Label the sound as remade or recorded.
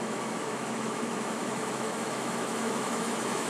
remade